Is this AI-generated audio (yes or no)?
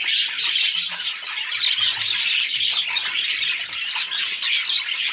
no